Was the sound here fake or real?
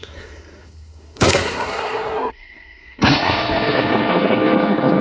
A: fake